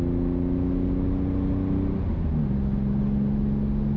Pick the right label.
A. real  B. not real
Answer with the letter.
A